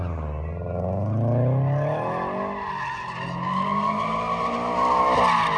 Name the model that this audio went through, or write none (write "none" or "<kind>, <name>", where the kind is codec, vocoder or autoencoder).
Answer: none